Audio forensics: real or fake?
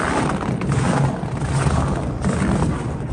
real